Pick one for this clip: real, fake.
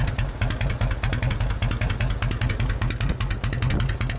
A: real